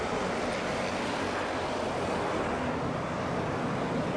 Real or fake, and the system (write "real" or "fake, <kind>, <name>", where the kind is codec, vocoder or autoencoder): real